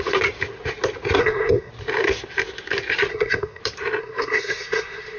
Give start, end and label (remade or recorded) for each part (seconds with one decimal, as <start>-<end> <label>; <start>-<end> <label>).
0.0-1.2 recorded; 1.2-1.7 remade; 1.7-3.1 recorded; 3.1-3.6 remade; 3.6-4.0 recorded; 4.0-5.2 remade